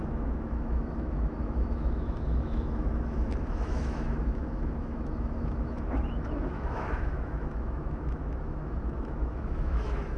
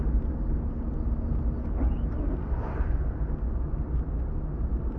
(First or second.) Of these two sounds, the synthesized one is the first